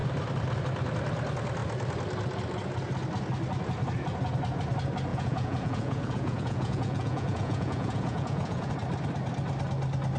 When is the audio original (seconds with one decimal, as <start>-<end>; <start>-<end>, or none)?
0.0-5.1; 8.7-10.2